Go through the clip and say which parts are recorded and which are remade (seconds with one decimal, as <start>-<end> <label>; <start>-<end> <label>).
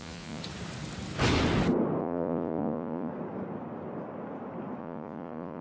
0.0-0.4 remade; 0.4-2.0 recorded; 2.0-3.1 remade; 3.1-4.8 recorded; 4.8-5.6 remade